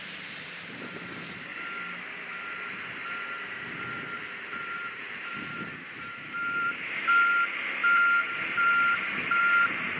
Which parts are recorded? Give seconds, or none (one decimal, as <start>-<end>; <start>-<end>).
1.5-4.6